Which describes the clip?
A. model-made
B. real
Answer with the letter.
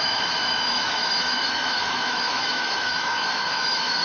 A